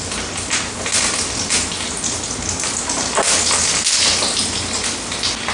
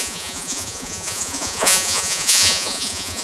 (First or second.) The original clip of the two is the first